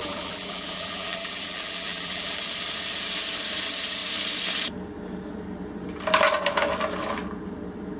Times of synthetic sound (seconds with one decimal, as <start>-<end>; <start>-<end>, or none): 0.0-2.4